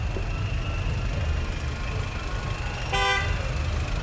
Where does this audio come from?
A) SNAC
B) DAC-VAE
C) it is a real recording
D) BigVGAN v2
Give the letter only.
C